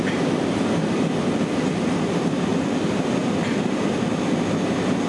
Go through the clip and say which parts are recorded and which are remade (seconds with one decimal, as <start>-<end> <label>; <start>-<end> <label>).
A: 0.0-5.1 recorded